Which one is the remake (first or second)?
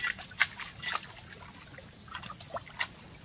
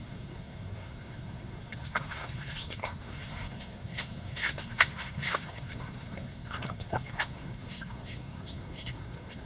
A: second